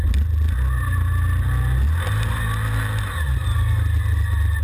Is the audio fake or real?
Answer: real